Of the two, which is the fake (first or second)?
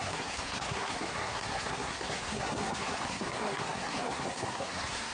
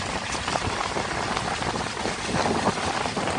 first